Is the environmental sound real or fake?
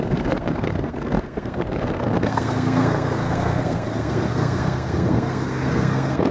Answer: fake